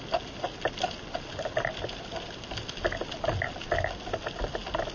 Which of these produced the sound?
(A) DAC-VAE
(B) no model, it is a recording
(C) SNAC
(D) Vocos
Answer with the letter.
B